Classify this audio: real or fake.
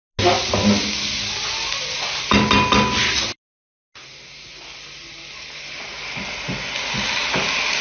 real